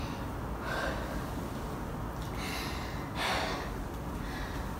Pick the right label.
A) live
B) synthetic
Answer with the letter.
A